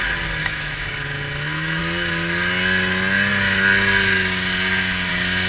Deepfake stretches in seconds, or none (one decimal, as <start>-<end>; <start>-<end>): 0.4-1.8